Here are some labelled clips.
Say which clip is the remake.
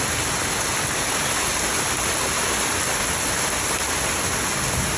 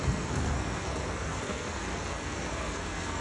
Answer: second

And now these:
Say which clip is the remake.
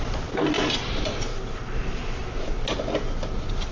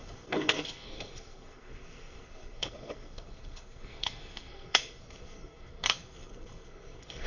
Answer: second